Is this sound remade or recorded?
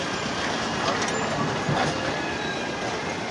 recorded